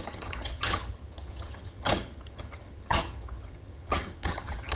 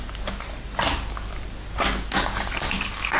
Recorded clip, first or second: second